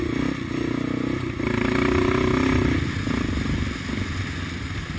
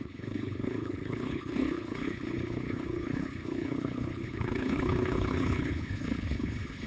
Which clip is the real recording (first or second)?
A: first